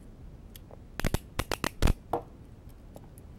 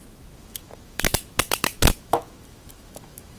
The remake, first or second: second